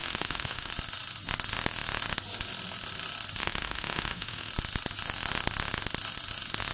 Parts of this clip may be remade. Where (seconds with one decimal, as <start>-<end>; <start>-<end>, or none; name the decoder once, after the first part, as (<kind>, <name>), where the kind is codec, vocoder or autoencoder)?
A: 0.0-0.7 (autoencoder, DAC-VAE); 3.4-4.5